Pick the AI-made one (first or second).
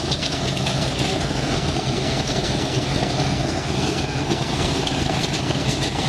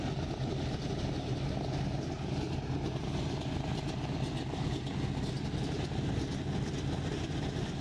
first